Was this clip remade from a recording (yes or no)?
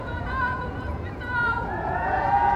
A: yes